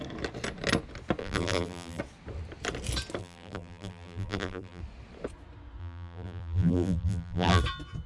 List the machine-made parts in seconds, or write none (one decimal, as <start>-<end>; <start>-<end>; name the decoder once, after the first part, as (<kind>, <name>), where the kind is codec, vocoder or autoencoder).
1.2-2.0 (vocoder, BigVGAN v2); 3.2-4.8; 5.8-7.6